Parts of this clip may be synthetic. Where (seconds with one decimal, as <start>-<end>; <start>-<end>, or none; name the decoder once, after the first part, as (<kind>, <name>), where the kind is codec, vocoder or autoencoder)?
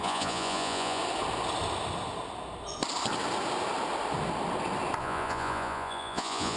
0.0-1.0 (vocoder, Vocos); 5.0-6.6